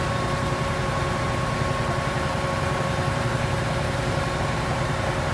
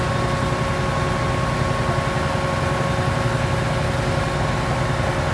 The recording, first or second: second